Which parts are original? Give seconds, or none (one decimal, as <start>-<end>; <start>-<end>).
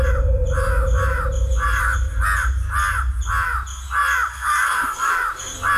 0.0-4.3; 5.1-5.8